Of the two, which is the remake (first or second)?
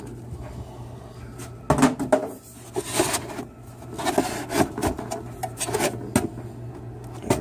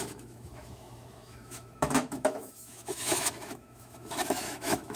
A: second